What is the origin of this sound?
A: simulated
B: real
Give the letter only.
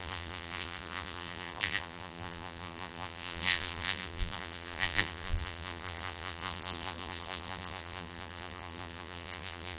A